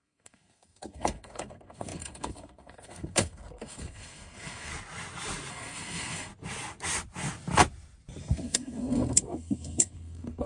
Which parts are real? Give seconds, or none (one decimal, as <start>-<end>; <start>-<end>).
4.7-5.5; 6.3-8.2